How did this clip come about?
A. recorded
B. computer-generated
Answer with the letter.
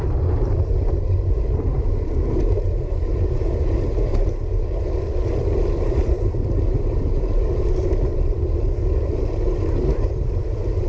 B